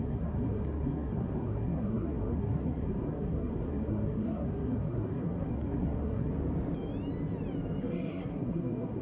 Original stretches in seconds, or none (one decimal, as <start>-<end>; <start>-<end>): 6.3-7.8